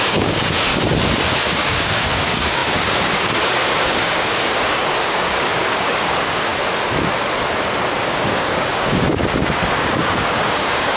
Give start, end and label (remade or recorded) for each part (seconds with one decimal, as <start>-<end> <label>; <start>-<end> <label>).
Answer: 0.0-0.7 remade; 0.7-1.5 recorded; 1.5-6.5 remade; 6.5-8.0 recorded; 8.0-11.0 remade